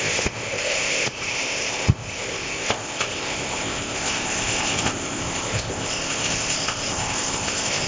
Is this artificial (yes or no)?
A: yes